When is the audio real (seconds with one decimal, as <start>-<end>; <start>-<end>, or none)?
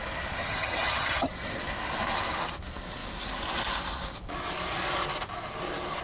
0.0-0.4; 1.3-6.0